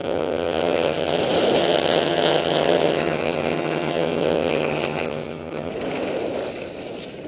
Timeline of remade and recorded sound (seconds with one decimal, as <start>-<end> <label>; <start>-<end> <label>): 0.0-1.2 remade; 1.2-1.6 recorded; 1.6-5.7 remade; 5.7-7.3 recorded